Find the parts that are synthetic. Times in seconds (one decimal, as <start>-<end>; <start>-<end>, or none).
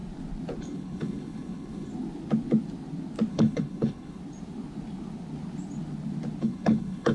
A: 0.6-1.9; 3.3-4.2; 6.4-7.1